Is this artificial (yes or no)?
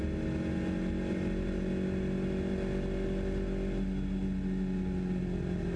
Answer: no